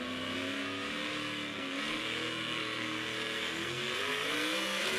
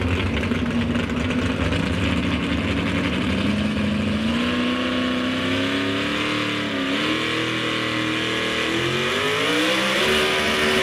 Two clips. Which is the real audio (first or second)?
second